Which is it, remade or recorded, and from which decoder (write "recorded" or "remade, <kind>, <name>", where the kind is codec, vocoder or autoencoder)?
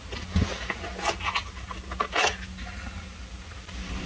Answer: recorded